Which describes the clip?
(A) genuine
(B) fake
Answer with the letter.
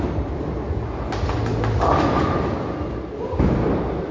A